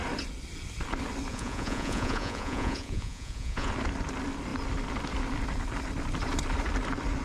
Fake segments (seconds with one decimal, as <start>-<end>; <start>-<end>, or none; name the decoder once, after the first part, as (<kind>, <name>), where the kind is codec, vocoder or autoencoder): 1.3-3.7 (vocoder, Vocos)